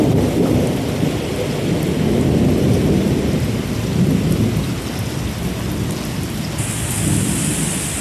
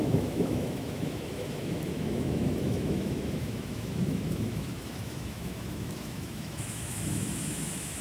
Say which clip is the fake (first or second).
second